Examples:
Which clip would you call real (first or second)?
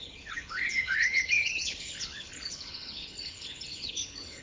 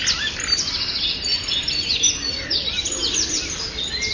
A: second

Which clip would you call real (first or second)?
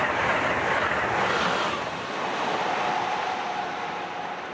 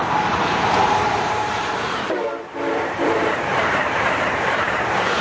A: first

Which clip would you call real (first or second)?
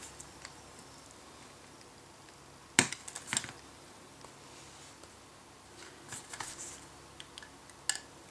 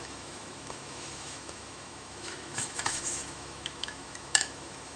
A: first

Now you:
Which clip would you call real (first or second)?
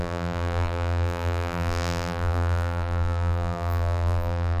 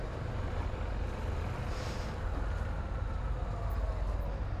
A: second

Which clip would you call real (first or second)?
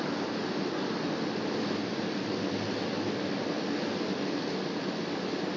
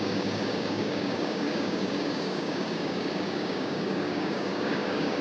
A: first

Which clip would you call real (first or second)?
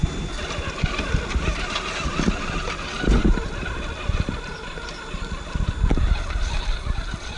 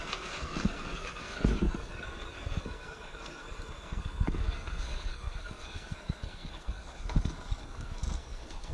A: first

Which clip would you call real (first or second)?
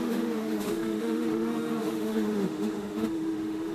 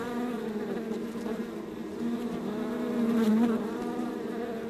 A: second